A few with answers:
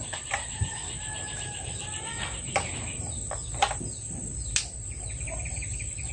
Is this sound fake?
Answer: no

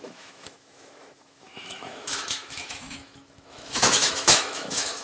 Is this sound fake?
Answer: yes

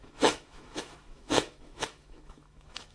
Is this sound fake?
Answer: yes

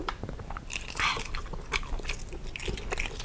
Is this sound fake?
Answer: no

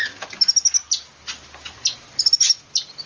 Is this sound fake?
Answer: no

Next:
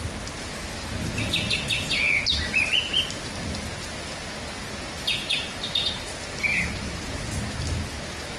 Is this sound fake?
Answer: no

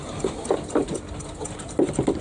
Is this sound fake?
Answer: no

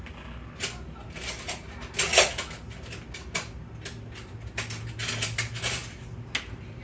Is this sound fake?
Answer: no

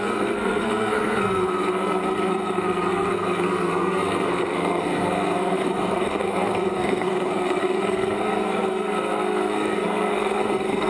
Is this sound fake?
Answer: yes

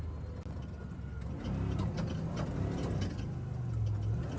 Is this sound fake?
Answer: no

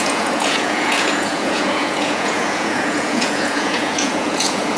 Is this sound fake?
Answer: yes